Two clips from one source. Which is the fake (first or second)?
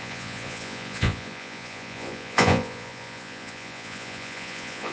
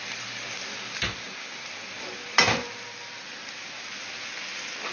first